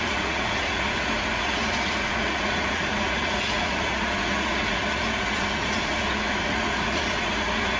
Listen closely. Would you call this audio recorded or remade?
remade